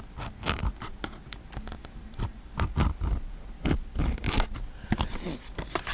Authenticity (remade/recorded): recorded